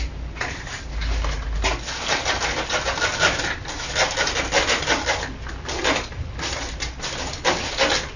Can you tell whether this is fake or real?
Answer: real